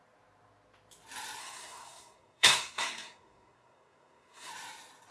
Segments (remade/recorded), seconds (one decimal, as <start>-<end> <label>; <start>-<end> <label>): 0.0-1.4 recorded; 1.4-4.5 remade; 4.5-5.1 recorded